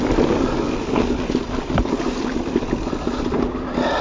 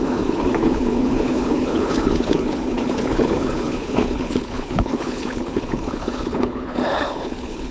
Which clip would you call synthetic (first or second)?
second